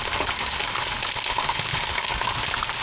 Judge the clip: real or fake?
real